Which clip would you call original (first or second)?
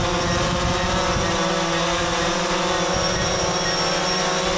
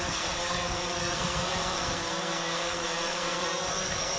first